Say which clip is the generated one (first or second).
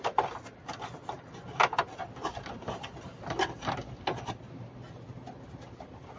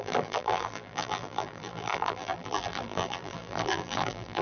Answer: second